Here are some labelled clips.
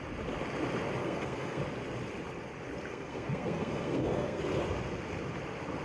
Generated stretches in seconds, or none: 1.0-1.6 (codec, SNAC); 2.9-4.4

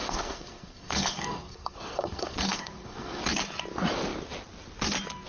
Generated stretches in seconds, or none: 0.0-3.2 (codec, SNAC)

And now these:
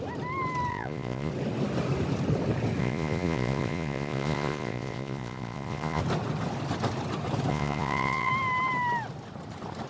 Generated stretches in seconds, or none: 0.7-1.3 (vocoder, Vocos); 2.8-6.0; 7.5-8.3

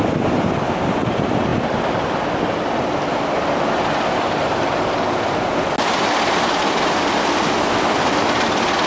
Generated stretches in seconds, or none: none

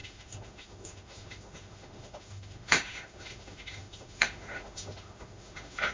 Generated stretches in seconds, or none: 0.0-5.9 (autoencoder, DAC-VAE)

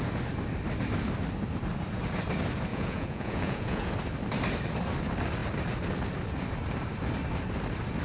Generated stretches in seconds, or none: 2.7-3.9 (vocoder, Vocos)